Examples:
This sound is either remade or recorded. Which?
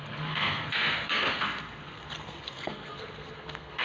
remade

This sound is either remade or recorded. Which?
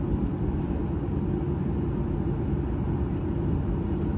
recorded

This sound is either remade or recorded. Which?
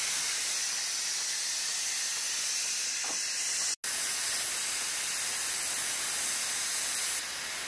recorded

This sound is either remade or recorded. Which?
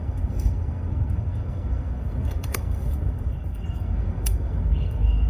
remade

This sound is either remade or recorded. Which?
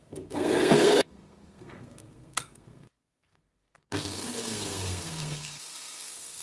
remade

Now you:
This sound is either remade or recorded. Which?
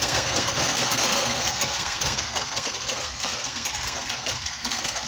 remade